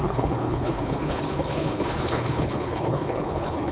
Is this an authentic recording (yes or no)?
no